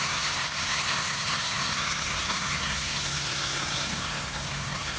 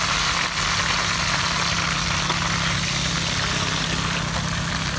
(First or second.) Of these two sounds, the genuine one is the second